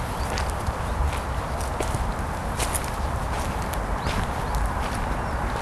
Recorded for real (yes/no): yes